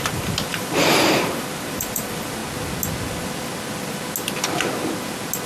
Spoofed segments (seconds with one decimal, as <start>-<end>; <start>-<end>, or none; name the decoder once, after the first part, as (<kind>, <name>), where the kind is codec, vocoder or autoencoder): 0.0-2.4 (vocoder, BigVGAN v2)